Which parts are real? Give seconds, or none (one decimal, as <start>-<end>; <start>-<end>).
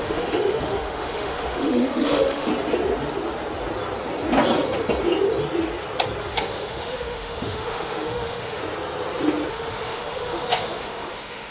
2.5-6.2; 8.6-9.5